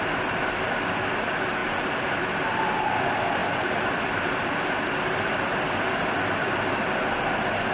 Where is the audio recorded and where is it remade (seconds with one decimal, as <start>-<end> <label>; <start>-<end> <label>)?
0.0-1.6 recorded; 1.6-2.2 remade; 2.2-3.4 recorded; 3.4-7.0 remade; 7.0-7.7 recorded